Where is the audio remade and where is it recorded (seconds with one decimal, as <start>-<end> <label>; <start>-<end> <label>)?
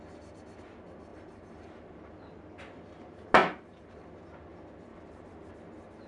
0.0-1.1 recorded; 1.1-2.0 remade; 2.0-3.4 recorded; 3.4-3.9 remade; 3.9-4.9 recorded; 4.9-5.5 remade; 5.5-6.1 recorded